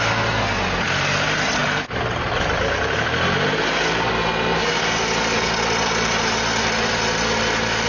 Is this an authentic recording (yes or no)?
yes